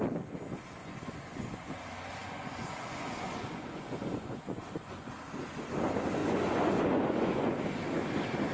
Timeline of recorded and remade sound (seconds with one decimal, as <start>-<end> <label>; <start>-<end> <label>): 0.0-0.8 recorded; 0.8-1.7 remade; 1.7-2.2 recorded; 2.2-5.1 remade; 5.1-6.2 recorded; 6.2-7.6 remade; 7.6-8.5 recorded